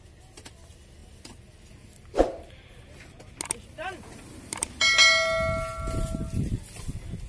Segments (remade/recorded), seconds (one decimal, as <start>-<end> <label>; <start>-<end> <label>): 0.0-7.3 recorded